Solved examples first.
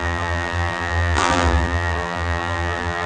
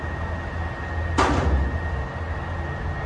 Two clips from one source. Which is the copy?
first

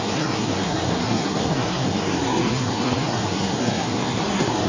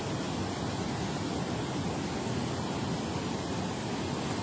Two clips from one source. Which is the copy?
first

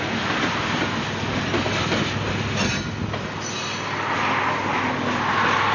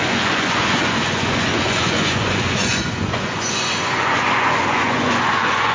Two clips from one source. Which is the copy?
second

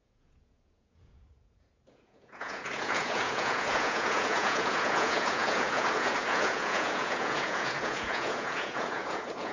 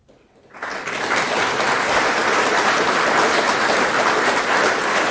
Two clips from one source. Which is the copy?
first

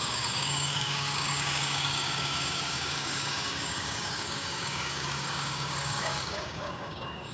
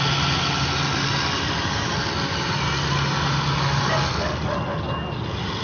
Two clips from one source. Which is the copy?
first